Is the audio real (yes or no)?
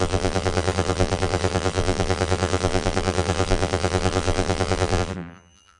no